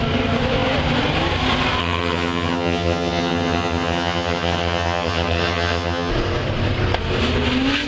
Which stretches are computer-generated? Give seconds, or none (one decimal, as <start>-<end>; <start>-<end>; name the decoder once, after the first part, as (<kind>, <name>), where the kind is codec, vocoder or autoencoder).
1.8-6.1 (vocoder, HiFi-GAN)